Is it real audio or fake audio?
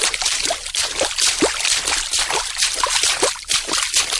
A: real